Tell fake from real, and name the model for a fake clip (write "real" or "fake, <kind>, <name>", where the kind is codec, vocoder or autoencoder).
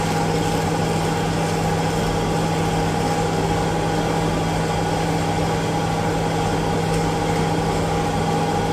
real